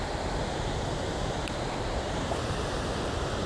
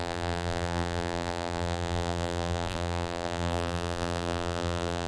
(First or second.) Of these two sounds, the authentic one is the first